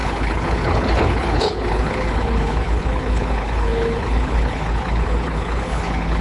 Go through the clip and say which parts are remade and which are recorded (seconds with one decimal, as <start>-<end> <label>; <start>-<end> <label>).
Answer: 0.0-6.2 remade